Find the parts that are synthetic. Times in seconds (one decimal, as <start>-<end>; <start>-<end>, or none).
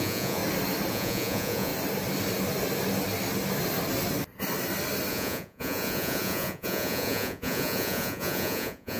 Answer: 0.0-0.4; 0.9-1.7; 5.1-9.0